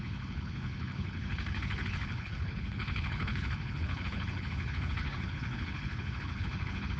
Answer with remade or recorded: remade